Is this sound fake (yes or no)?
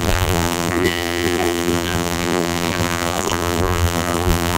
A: yes